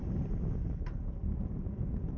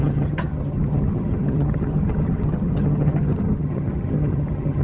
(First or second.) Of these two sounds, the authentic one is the first